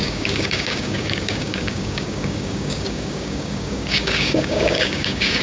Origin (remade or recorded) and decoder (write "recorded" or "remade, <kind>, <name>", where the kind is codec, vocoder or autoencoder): remade, codec, DAC